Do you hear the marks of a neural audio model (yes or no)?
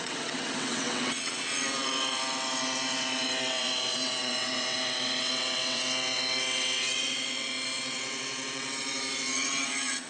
yes